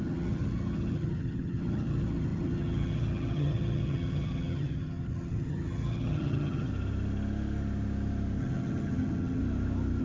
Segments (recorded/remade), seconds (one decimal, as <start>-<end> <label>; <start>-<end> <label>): 0.0-6.7 remade; 6.7-8.4 recorded; 8.4-9.4 remade; 9.4-10.0 recorded